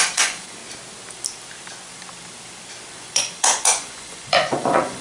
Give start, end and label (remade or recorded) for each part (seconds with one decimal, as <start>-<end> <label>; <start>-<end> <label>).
0.0-0.6 remade; 0.6-2.9 recorded; 2.9-5.0 remade